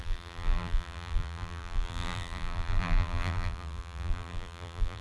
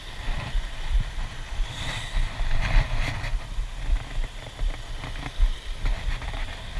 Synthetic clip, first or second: first